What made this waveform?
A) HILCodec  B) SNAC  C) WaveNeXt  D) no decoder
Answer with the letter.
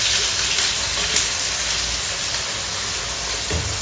D